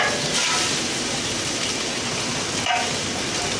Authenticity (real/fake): real